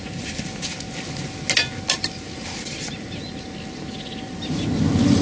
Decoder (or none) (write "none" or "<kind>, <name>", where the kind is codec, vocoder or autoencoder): none